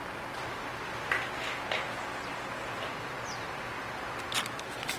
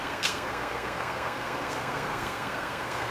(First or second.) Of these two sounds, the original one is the first